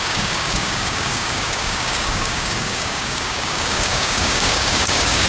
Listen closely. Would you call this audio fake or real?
fake